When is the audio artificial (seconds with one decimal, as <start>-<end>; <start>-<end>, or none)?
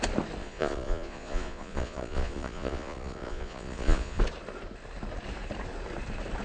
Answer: 0.4-4.2